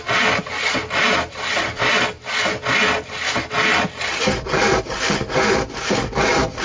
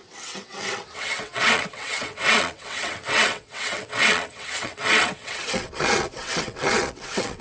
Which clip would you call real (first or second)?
first